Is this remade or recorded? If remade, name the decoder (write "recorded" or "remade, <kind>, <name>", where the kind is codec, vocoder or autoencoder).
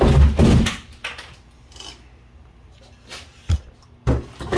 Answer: recorded